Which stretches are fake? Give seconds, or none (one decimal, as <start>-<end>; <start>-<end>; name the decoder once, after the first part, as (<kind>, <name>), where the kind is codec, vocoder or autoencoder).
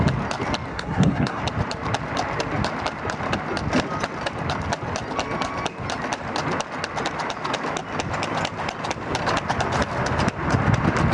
0.7-1.4 (codec, SNAC)